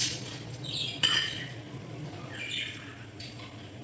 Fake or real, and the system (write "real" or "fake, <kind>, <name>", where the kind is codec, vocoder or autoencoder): fake, vocoder, Vocos